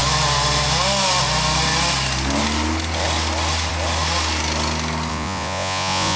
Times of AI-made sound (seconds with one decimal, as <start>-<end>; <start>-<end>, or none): 5.1-6.2